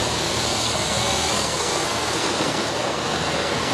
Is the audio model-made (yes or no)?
yes